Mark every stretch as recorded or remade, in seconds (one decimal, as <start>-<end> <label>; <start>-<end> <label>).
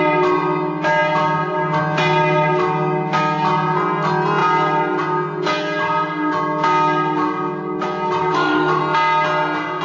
0.0-8.2 recorded; 8.2-8.8 remade; 8.8-9.8 recorded